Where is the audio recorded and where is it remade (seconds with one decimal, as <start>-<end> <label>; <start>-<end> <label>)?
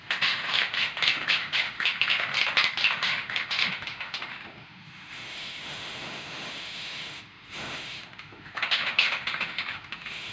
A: 0.0-2.3 remade; 2.3-2.9 recorded; 2.9-10.3 remade